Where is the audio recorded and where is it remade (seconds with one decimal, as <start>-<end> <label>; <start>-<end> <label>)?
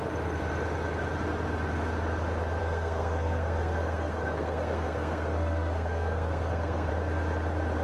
0.0-2.6 recorded; 2.6-6.9 remade; 6.9-7.8 recorded